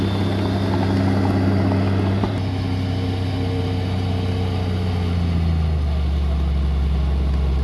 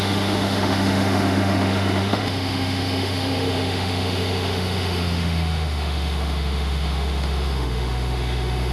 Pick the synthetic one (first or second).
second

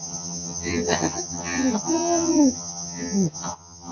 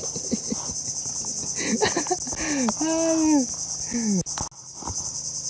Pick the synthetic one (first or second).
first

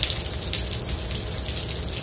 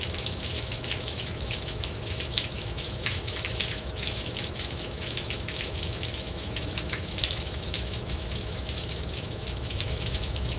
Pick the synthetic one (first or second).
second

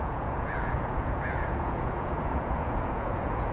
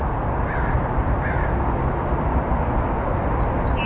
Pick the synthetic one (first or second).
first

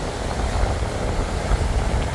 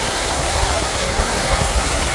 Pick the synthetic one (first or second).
second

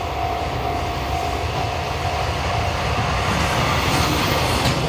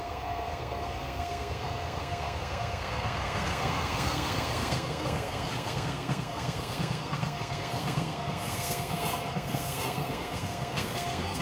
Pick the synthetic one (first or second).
second